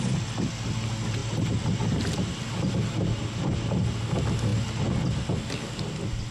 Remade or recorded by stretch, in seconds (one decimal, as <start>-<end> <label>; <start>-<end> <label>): 0.0-6.3 recorded